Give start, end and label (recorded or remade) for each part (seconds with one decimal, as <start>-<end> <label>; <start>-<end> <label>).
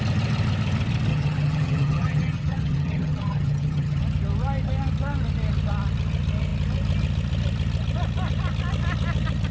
0.0-1.1 recorded; 1.1-4.0 remade; 4.0-9.5 recorded